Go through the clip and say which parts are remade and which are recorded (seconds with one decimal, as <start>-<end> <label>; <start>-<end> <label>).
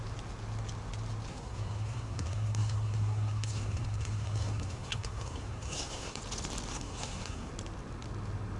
0.0-1.3 recorded; 1.3-6.2 remade; 6.2-6.7 recorded; 6.7-7.5 remade; 7.5-8.6 recorded